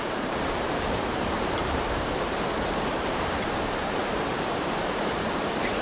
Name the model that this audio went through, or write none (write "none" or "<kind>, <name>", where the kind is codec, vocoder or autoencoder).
vocoder, BigVGAN v2